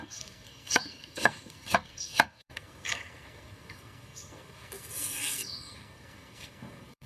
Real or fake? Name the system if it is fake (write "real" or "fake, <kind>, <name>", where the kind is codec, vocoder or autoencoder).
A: fake, codec, SNAC